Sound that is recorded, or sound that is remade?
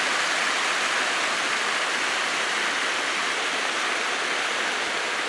recorded